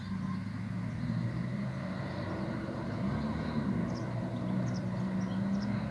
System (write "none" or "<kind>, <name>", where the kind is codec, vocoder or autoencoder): none